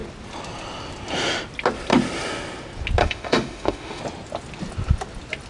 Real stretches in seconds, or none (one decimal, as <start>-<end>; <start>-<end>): 0.0-3.0; 4.0-5.5

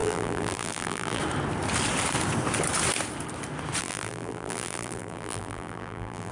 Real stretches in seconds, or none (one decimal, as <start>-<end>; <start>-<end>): 1.2-3.8